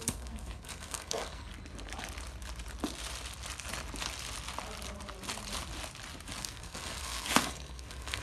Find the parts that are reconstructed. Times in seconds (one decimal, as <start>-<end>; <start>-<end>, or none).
0.0-1.5; 6.4-8.2